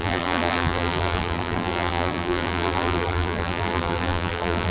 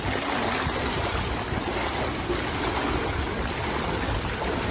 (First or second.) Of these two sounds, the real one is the second